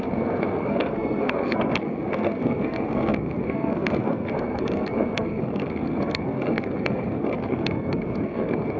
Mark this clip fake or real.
fake